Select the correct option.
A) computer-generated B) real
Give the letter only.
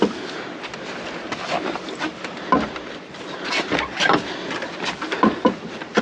B